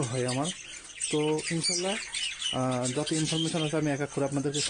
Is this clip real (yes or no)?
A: yes